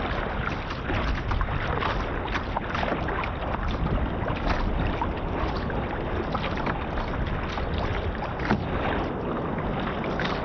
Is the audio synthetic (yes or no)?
no